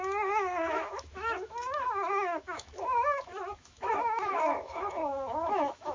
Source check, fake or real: fake